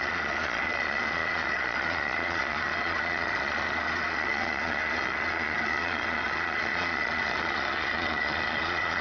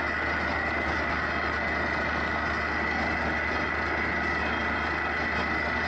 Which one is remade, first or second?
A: first